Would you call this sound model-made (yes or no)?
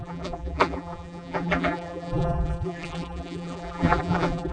yes